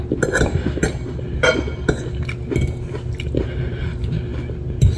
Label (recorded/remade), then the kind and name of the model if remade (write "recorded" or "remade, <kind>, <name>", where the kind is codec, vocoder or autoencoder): recorded